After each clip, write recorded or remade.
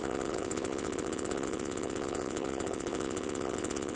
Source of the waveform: remade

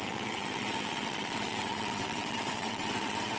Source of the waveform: remade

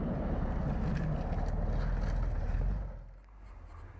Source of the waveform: recorded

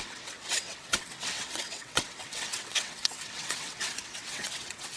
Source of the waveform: remade